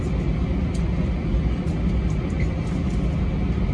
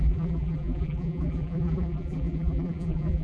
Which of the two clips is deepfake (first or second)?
second